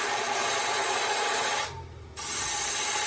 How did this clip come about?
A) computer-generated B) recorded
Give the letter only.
B